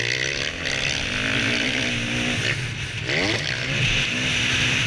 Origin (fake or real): real